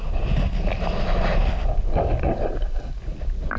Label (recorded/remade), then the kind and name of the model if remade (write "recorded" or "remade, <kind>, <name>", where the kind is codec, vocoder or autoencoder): recorded